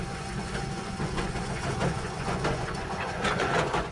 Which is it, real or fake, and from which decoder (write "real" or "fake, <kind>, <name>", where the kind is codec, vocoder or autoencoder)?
fake, vocoder, Vocos